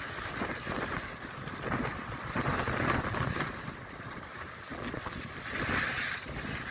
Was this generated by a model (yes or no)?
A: no